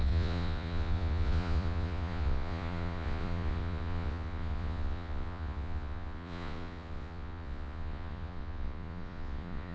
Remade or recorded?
remade